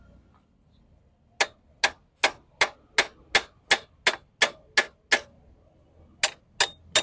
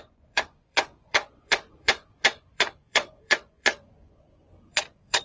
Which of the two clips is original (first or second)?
first